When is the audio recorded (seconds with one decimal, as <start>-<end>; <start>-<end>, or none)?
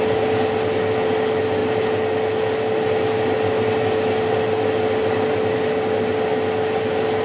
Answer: 0.0-7.2